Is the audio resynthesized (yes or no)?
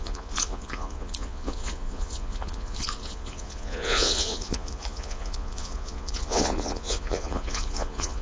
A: yes